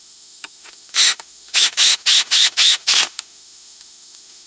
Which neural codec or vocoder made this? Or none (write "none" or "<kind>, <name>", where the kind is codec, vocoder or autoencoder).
autoencoder, DAC-VAE